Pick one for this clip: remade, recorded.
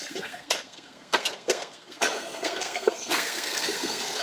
remade